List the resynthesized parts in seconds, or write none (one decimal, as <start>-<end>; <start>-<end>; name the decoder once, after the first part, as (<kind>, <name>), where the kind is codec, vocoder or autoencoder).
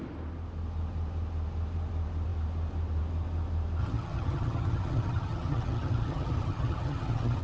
3.8-7.4 (vocoder, HiFi-GAN)